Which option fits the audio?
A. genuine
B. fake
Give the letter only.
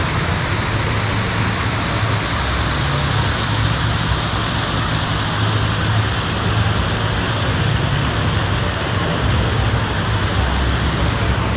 A